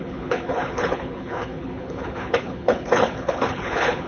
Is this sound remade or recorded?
remade